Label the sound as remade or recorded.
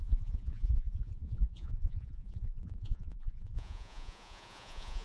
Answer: remade